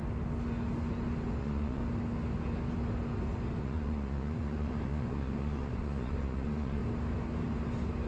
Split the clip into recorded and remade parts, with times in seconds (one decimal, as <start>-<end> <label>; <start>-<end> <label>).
0.0-1.4 recorded; 1.4-1.8 remade; 1.8-3.6 recorded; 3.6-6.8 remade; 6.8-8.1 recorded